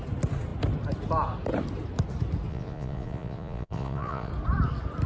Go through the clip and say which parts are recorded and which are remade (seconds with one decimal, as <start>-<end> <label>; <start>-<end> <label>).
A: 0.0-2.5 recorded; 2.5-4.3 remade; 4.3-5.1 recorded